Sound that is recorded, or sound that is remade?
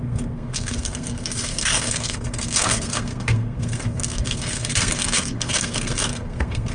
remade